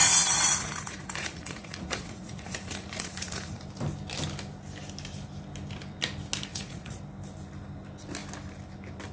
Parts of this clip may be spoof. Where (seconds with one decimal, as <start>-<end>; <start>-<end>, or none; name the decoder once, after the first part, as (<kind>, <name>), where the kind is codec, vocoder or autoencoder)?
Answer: 0.0-3.6 (vocoder, Vocos); 6.5-7.0